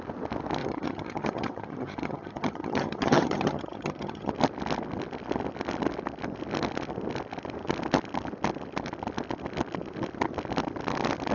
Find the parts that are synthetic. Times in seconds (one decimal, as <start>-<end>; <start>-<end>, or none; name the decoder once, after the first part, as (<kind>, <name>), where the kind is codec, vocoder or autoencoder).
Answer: 0.6-4.3 (vocoder, HiFi-GAN)